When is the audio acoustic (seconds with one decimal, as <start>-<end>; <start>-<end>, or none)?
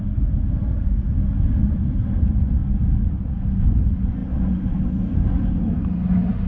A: 0.0-1.3; 2.4-6.5